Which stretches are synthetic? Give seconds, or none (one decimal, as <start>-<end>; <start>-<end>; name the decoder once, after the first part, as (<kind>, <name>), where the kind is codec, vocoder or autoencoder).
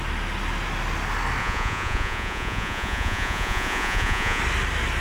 1.4-4.4 (vocoder, Vocos)